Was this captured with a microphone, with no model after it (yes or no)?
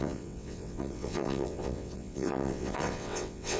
no